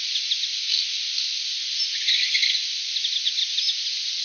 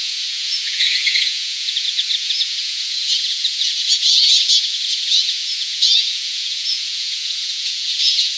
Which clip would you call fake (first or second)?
second